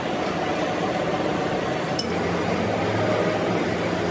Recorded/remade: recorded